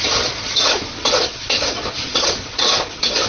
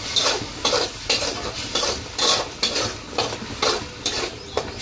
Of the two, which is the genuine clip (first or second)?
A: second